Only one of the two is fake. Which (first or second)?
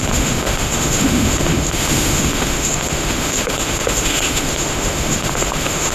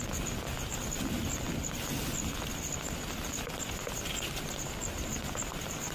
first